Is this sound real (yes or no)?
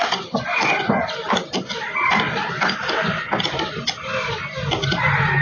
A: yes